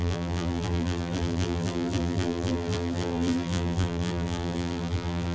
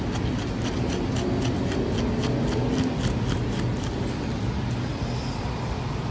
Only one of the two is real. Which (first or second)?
second